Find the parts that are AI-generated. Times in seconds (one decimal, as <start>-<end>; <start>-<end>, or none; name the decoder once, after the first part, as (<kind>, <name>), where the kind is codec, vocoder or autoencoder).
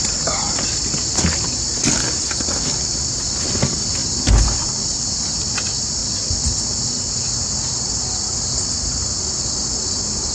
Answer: 4.0-5.3 (vocoder, BigVGAN v2); 6.0-6.6